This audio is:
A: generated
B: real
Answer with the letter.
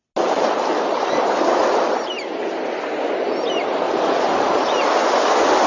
B